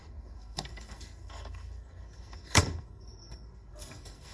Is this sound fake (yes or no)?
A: yes